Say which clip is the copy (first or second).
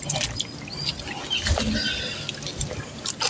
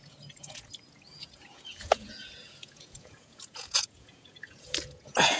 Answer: second